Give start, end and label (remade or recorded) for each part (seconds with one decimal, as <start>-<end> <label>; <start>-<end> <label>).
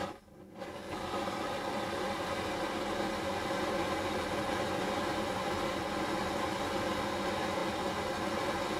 0.0-8.8 recorded